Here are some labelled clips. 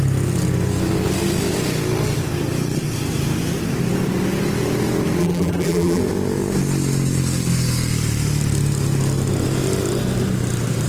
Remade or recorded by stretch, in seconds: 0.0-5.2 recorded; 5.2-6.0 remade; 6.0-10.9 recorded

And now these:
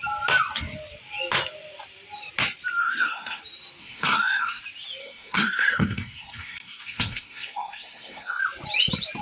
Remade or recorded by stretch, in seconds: 0.0-2.8 recorded; 2.8-3.4 remade; 3.4-3.8 recorded; 3.8-4.6 remade; 4.6-5.0 recorded; 5.0-8.4 remade; 8.4-9.2 recorded

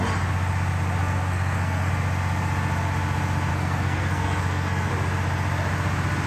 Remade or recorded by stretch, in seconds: 0.0-1.0 recorded; 1.0-1.9 remade; 1.9-3.5 recorded; 3.5-4.9 remade; 4.9-6.3 recorded

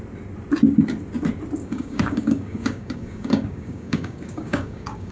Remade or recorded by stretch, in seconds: 0.0-1.6 recorded; 1.6-5.1 remade

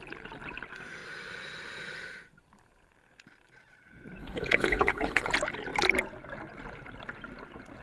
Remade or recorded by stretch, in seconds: 0.0-4.2 recorded; 4.2-5.3 remade; 5.3-7.8 recorded